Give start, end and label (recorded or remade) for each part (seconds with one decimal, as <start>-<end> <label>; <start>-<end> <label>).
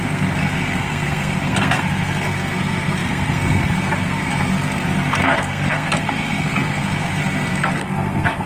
0.0-8.5 remade